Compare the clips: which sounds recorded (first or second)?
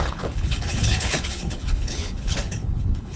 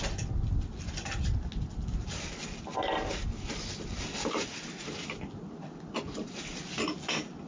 second